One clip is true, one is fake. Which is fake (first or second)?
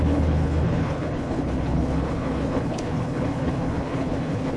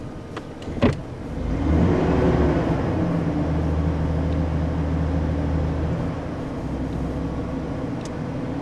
first